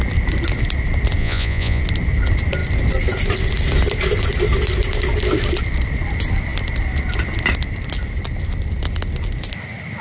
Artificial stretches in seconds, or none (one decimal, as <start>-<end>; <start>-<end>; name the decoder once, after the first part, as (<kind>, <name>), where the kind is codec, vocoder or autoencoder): 1.2-1.8 (vocoder, Vocos)